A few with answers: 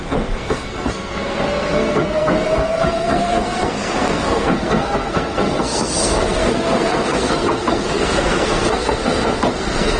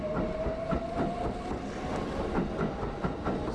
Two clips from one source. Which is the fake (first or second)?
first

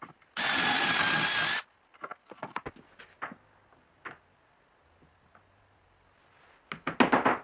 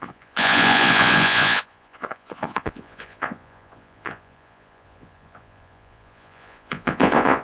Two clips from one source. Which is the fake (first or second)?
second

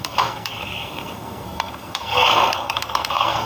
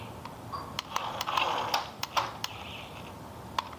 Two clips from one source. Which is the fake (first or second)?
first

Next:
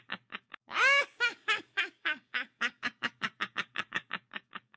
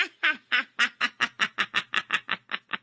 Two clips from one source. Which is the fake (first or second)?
first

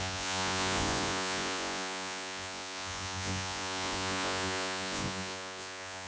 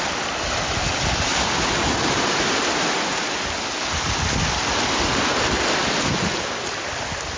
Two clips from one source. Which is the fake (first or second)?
first